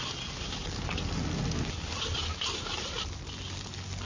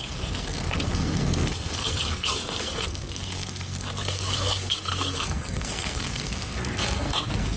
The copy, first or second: second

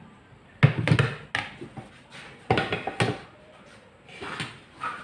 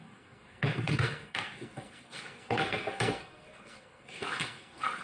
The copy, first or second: second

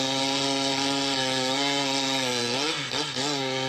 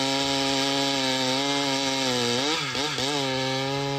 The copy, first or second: first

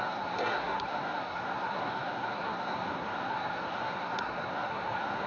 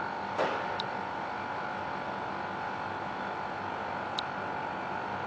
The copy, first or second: first